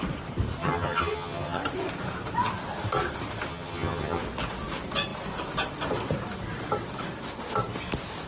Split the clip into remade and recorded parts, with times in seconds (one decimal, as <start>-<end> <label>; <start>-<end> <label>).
0.0-0.6 recorded; 0.6-1.6 remade; 1.6-3.5 recorded; 3.5-4.2 remade; 4.2-8.3 recorded

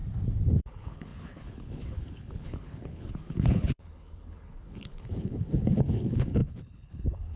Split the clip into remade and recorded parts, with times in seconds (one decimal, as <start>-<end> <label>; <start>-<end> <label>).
0.0-0.6 recorded; 0.6-7.4 remade

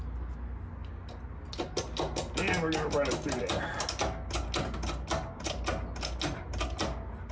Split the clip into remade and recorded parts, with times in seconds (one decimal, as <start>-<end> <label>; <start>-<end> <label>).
0.0-7.3 recorded

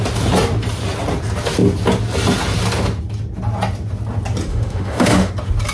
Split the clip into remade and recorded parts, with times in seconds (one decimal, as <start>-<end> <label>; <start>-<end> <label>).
0.0-4.5 recorded; 4.5-5.3 remade; 5.3-5.7 recorded

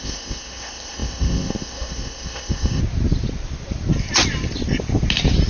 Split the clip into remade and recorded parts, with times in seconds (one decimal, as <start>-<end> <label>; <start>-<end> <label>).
0.0-2.8 remade; 2.8-5.5 recorded

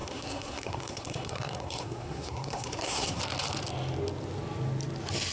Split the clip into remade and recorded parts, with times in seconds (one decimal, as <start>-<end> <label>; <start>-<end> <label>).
0.0-3.2 remade; 3.2-5.3 recorded